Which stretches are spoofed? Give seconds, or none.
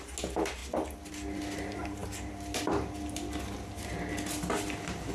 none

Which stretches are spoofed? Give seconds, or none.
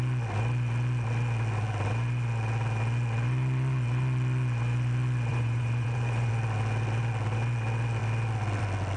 5.3-6.3 (vocoder, Vocos)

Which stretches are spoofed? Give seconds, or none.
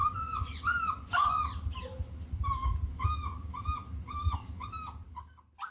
0.0-1.4 (vocoder, Vocos)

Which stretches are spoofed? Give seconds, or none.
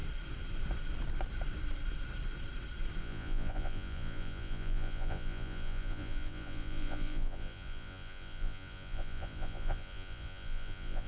3.0-11.1 (vocoder, Vocos)